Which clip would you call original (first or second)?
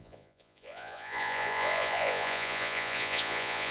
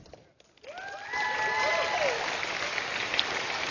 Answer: second